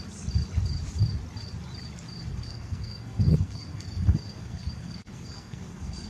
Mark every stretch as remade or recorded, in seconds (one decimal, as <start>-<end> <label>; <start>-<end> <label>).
0.0-2.3 recorded; 2.3-6.1 remade